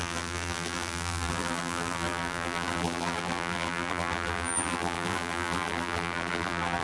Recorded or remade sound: remade